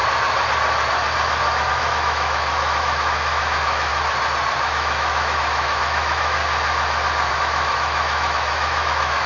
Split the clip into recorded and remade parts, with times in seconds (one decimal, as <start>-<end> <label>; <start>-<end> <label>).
0.0-1.7 recorded; 1.7-3.9 remade; 3.9-4.6 recorded; 4.6-6.4 remade; 6.4-7.3 recorded; 7.3-9.3 remade